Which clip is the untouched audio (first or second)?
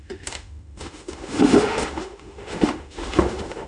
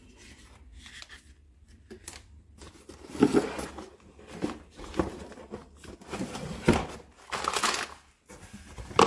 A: second